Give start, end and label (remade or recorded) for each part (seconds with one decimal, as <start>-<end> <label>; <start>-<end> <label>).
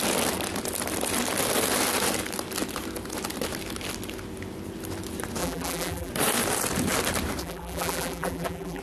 0.0-5.4 recorded; 5.4-6.1 remade; 6.1-7.4 recorded; 7.4-8.8 remade